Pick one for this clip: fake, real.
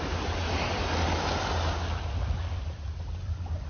real